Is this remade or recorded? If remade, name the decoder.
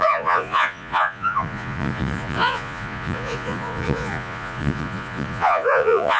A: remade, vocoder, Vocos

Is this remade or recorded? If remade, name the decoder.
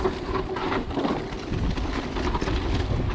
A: recorded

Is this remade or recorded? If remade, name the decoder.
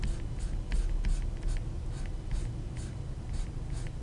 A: recorded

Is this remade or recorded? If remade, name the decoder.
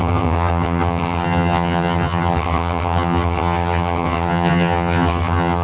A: remade, vocoder, HiFi-GAN